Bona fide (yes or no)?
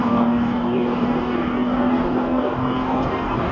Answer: no